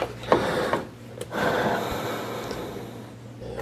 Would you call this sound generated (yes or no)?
no